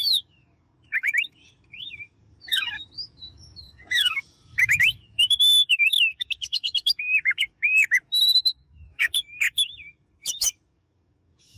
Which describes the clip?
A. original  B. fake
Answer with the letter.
B